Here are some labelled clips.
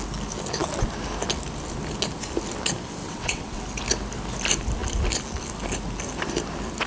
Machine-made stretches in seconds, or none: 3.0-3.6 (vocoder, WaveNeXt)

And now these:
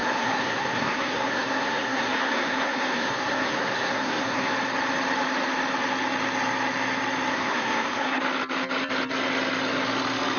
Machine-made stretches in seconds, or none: 0.0-4.5 (codec, SNAC); 7.3-8.2

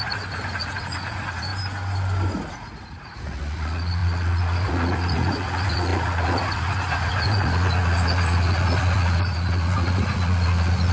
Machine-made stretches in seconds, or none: 0.0-1.5 (vocoder, Vocos); 2.5-10.9

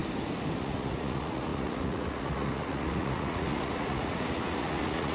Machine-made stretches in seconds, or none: 0.6-5.1 (vocoder, Vocos)

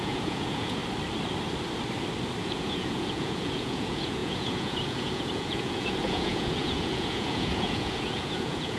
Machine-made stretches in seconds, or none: 0.0-0.8 (vocoder, Vocos); 2.4-8.8

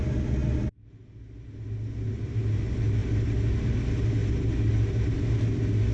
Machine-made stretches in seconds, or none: none